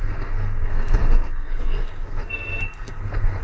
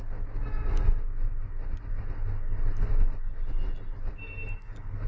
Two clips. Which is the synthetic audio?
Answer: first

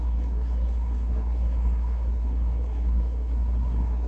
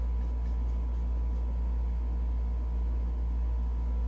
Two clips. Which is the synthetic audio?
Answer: first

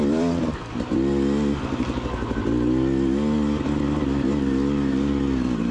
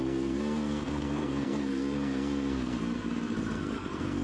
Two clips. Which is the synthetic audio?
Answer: second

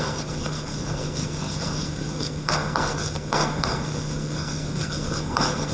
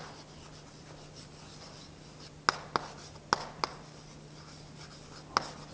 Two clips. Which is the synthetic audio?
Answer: first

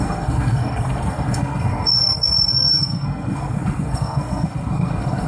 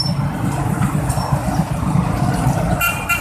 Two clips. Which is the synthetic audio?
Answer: first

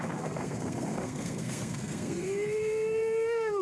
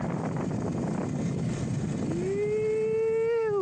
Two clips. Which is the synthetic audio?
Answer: first